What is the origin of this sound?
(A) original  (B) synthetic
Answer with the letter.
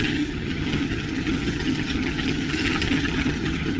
B